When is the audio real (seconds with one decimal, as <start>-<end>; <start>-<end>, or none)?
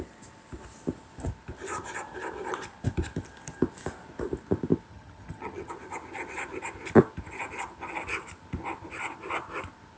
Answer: 0.0-4.9; 5.7-10.0